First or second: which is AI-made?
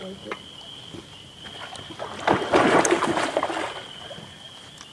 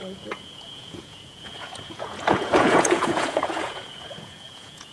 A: second